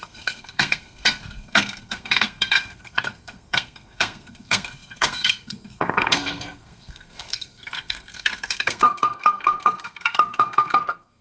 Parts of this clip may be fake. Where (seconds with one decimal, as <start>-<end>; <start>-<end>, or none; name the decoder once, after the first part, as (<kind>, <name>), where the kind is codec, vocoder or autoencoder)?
0.0-11.2 (codec, SNAC)